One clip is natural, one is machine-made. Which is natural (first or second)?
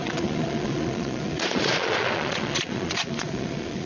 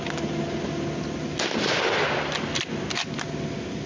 second